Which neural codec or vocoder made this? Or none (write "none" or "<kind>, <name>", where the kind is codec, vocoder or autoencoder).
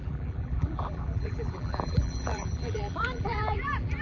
vocoder, BigVGAN v2